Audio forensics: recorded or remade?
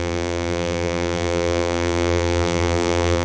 remade